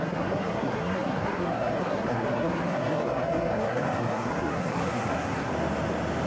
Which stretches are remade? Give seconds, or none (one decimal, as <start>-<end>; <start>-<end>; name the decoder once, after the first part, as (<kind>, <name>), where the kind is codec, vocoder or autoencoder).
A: 0.0-5.5 (codec, SNAC)